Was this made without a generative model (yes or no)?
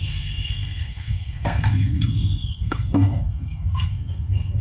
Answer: no